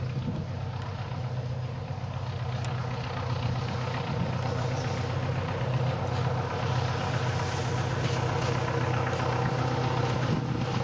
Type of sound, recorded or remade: recorded